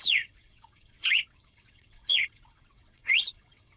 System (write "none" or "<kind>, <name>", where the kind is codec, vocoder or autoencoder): vocoder, WaveNeXt